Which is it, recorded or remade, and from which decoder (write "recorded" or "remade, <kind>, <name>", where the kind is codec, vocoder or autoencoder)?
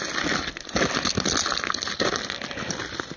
recorded